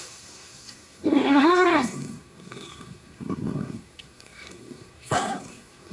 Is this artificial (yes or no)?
yes